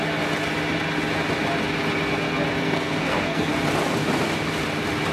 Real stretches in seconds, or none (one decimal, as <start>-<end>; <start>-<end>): 0.0-2.6; 3.5-5.1

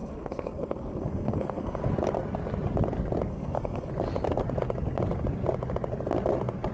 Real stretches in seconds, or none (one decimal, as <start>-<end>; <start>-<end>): 1.8-3.3; 3.9-6.7